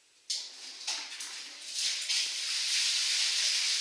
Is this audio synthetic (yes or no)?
no